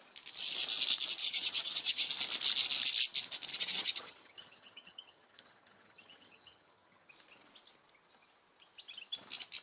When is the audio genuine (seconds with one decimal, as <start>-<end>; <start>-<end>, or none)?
0.0-1.2; 2.1-3.5; 7.1-9.6